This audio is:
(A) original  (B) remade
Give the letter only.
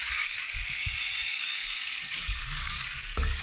B